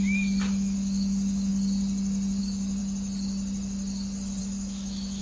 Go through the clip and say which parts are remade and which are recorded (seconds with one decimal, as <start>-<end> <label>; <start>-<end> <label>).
0.0-1.5 remade; 1.5-2.4 recorded; 2.4-2.8 remade; 2.8-4.4 recorded; 4.4-5.2 remade